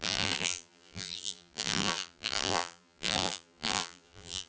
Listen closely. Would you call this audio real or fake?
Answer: fake